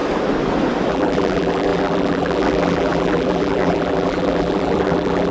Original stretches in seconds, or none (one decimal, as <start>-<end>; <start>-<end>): 0.0-0.9